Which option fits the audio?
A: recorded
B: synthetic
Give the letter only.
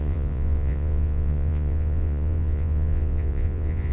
B